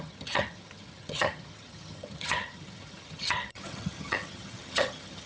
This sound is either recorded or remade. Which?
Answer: remade